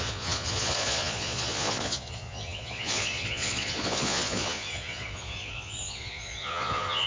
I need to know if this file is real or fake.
fake